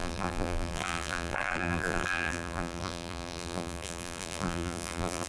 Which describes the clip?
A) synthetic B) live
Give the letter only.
A